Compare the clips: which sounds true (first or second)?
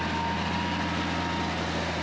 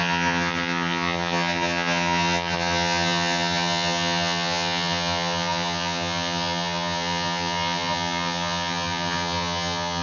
first